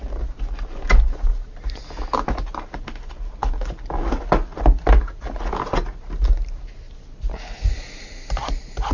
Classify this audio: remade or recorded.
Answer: recorded